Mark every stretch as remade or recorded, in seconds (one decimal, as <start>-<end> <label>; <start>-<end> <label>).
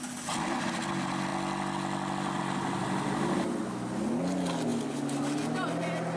0.0-6.2 recorded